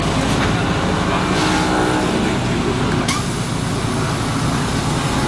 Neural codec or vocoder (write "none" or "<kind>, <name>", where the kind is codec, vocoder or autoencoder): none